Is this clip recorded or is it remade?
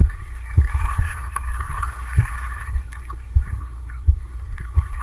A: remade